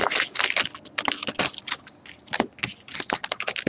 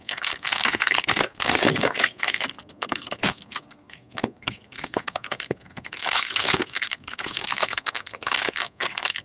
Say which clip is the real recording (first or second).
first